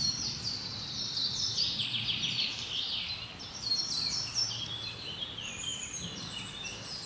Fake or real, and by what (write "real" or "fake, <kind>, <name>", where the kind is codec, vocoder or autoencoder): real